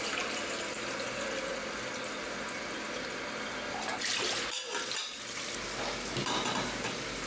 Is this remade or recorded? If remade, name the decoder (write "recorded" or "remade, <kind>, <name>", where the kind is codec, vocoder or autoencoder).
recorded